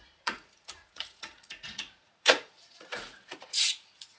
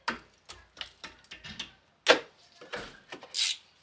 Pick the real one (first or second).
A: second